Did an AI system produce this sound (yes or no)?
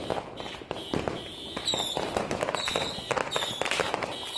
no